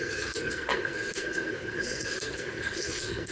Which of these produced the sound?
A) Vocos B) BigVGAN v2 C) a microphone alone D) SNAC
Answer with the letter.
D